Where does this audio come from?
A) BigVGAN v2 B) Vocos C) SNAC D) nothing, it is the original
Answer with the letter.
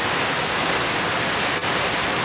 D